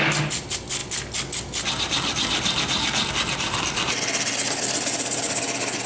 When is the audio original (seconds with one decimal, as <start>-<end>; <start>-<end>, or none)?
0.0-5.9

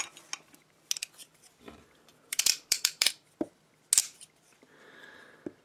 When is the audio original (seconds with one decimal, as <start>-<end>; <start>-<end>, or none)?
0.0-1.2; 3.3-5.6

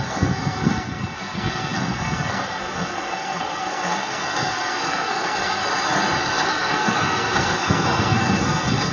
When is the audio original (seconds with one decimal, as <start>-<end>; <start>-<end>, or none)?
5.6-6.2